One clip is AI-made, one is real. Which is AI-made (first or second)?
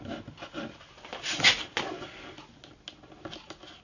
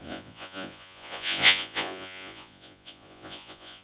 second